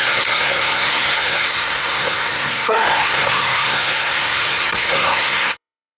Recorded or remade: remade